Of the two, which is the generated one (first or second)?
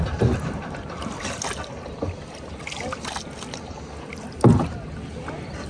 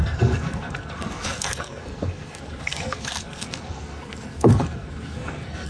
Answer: second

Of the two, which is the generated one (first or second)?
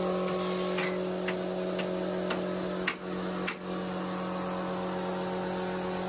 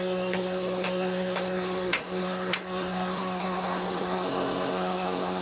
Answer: second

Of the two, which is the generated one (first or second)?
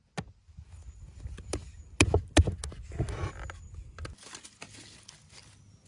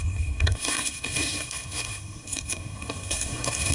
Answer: second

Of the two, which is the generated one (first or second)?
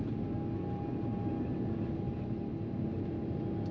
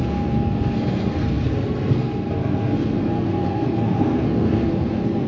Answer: second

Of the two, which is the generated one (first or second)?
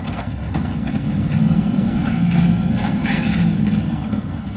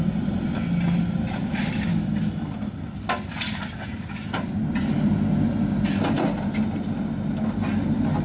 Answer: first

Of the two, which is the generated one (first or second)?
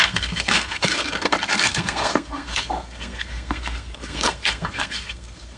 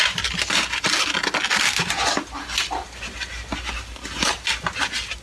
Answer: first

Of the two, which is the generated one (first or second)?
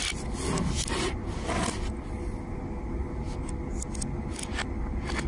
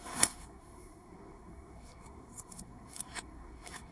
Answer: second